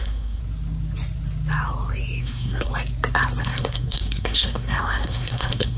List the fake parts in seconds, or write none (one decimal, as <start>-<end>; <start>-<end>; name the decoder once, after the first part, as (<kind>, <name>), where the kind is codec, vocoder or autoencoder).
0.0-0.4 (codec, SNAC); 2.2-2.7; 3.4-5.8